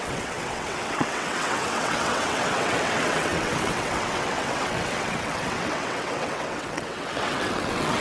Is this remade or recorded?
remade